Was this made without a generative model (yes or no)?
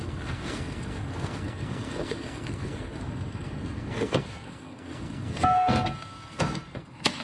no